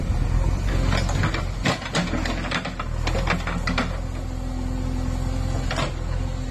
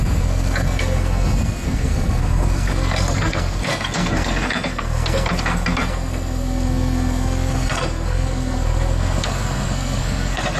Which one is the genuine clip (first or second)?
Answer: first